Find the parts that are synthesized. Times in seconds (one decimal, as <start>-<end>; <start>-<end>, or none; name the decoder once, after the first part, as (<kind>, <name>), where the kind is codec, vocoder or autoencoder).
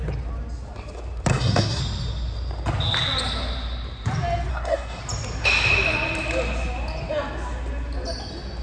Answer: 1.3-1.8 (codec, SNAC); 4.5-5.0